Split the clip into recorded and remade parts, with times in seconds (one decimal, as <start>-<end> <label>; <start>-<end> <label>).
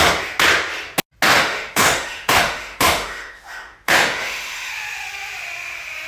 0.0-1.3 recorded; 1.3-4.7 remade; 4.7-6.1 recorded